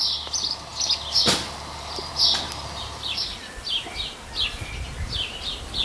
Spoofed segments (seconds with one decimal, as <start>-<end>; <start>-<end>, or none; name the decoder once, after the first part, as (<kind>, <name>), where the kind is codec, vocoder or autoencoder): 3.3-4.0 (vocoder, BigVGAN v2)